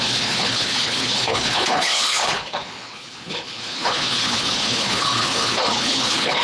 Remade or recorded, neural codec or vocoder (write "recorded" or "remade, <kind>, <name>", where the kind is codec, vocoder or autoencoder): remade, codec, HILCodec